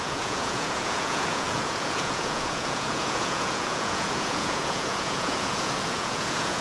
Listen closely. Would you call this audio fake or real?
fake